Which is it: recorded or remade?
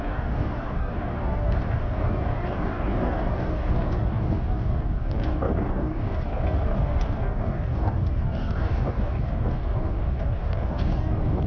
remade